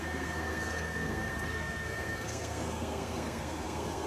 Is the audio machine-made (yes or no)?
yes